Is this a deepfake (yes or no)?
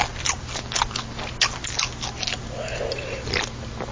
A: no